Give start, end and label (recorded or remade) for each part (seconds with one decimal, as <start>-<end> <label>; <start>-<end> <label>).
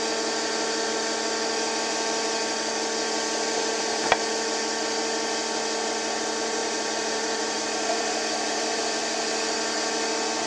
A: 0.0-6.6 recorded; 6.6-8.8 remade; 8.8-10.5 recorded